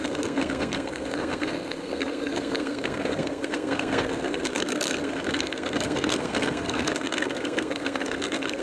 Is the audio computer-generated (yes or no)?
yes